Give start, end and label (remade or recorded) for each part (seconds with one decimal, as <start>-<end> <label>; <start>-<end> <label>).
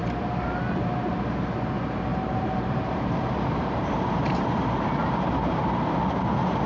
0.0-2.1 recorded; 2.1-6.0 remade; 6.0-6.7 recorded